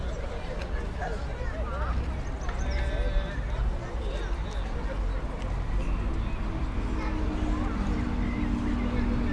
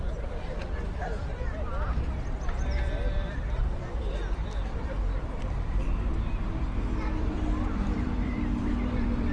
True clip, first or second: first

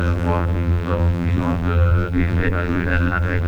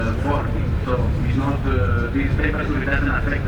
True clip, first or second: second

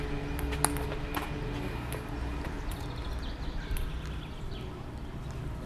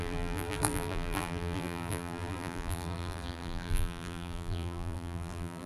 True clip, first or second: first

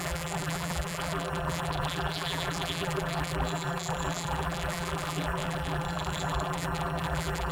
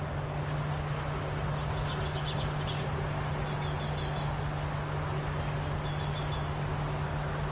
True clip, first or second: second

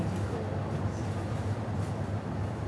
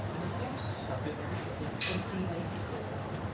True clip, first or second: first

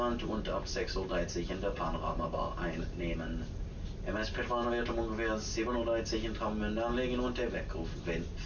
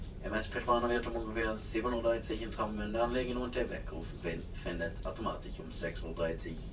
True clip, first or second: first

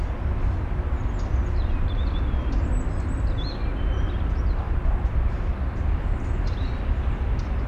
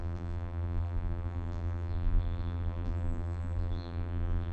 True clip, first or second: first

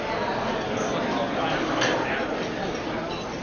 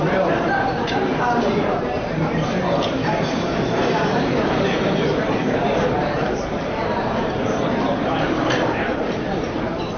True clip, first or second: first